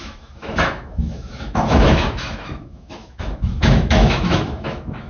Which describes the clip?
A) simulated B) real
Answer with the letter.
A